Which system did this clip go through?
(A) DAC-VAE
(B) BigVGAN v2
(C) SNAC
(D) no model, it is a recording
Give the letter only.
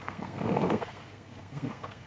C